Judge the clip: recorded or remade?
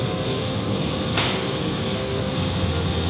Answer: remade